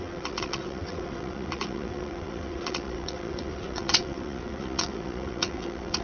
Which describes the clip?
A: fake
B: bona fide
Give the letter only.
A